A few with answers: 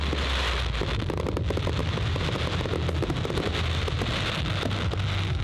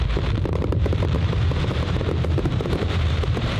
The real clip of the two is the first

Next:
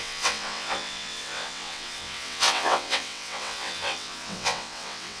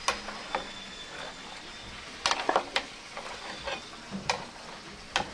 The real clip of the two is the second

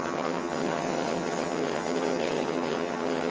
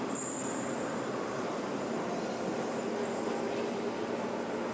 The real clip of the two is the second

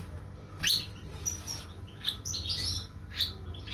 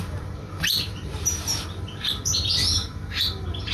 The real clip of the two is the first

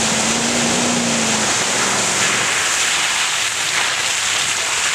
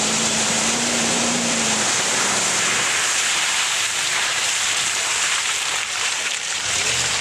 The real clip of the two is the first